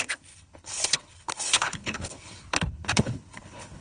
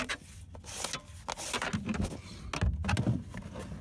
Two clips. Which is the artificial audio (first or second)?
first